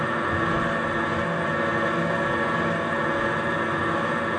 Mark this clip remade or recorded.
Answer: recorded